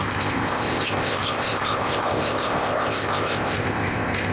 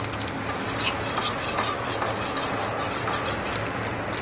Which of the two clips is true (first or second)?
second